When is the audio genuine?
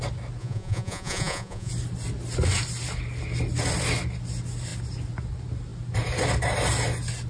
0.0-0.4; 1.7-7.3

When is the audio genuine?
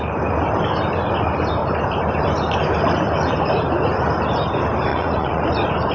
0.0-4.9; 5.4-5.9